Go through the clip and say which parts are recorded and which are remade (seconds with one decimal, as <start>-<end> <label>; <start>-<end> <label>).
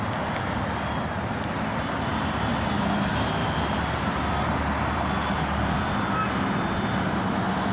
0.0-2.1 recorded; 2.1-6.2 remade; 6.2-7.7 recorded